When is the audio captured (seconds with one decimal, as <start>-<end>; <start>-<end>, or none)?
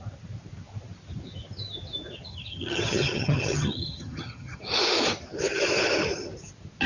0.0-2.3; 4.6-6.9